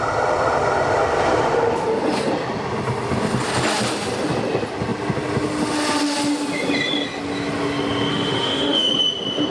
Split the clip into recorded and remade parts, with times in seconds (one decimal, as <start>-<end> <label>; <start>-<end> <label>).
0.0-8.1 recorded; 8.1-8.9 remade; 8.9-9.5 recorded